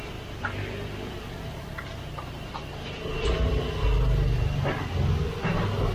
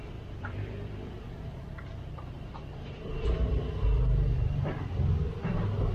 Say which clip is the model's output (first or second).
second